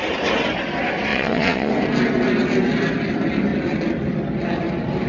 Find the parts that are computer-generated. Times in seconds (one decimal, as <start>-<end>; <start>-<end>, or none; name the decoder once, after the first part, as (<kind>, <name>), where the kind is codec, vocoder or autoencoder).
1.1-1.7 (vocoder, Vocos)